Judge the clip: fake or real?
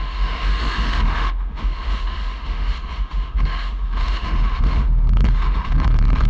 fake